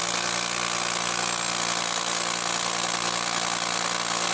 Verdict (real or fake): real